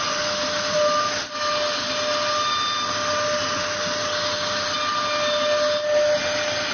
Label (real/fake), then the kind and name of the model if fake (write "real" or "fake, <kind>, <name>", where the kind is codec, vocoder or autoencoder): real